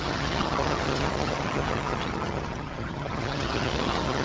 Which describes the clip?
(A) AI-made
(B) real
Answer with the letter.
A